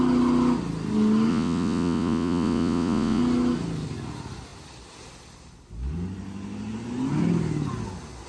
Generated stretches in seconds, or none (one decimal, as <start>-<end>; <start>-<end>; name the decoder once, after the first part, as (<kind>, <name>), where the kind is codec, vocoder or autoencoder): 1.3-3.2 (vocoder, Vocos)